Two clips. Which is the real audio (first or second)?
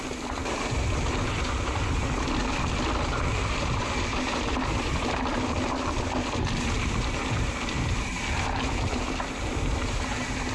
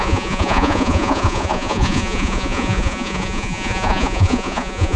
first